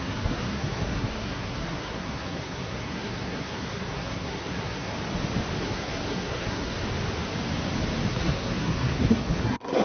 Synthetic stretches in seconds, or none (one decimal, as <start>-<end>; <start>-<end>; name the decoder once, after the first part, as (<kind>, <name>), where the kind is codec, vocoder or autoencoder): 0.0-4.9 (codec, SNAC); 5.6-6.8; 8.1-9.8